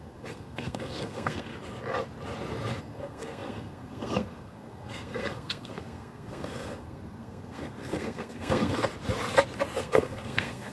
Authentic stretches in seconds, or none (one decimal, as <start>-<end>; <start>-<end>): 1.5-2.8; 8.9-9.8